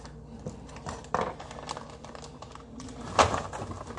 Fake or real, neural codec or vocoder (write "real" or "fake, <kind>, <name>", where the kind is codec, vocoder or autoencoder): real